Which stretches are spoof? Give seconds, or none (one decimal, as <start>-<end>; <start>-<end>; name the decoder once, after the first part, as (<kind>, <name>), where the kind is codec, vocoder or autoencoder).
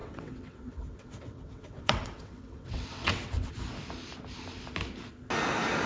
0.0-3.5 (vocoder, WaveNeXt)